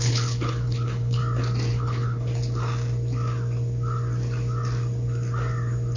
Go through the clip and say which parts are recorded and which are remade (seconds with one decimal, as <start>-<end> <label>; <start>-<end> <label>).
0.0-1.2 remade; 1.2-1.7 recorded; 1.7-2.3 remade; 2.3-6.0 recorded